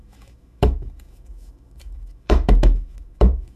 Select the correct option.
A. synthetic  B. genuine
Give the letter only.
A